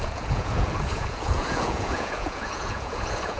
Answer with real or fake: fake